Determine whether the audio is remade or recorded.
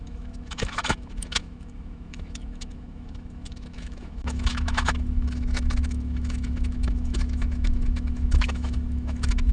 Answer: remade